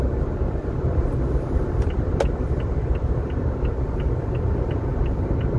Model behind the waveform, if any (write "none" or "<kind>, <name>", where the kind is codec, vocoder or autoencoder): none